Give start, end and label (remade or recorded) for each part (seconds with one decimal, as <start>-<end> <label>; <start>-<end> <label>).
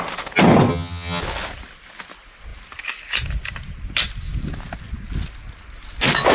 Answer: 0.0-0.7 recorded; 0.7-1.2 remade; 1.2-6.3 recorded